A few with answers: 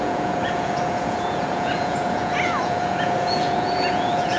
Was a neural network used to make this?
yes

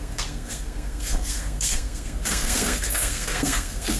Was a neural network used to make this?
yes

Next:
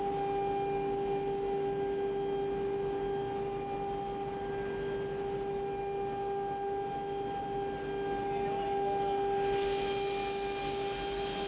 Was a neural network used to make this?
no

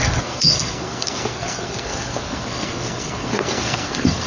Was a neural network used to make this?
yes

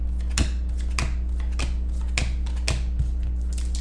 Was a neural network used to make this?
no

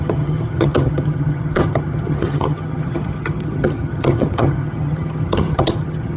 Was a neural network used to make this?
yes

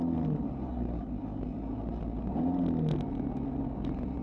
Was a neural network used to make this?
no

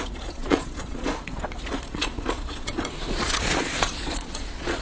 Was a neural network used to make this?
yes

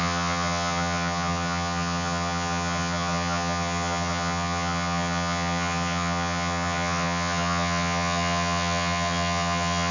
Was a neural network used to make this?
yes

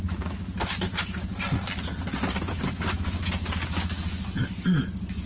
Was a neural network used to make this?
no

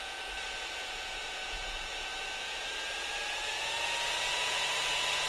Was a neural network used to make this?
yes